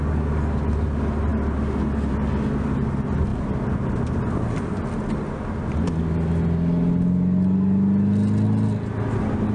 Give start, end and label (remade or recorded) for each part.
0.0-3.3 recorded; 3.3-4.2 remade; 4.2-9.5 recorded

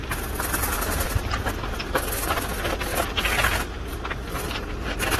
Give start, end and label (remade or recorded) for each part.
0.0-5.2 recorded

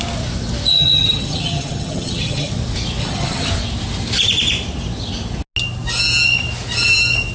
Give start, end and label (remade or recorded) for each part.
0.0-0.7 recorded; 0.7-2.5 remade; 2.5-3.0 recorded; 3.0-3.5 remade; 3.5-7.3 recorded

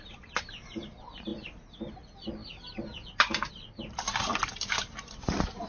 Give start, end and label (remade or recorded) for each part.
0.0-5.7 recorded

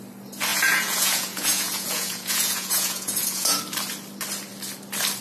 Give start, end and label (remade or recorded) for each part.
0.0-0.5 recorded; 0.5-3.6 remade; 3.6-5.2 recorded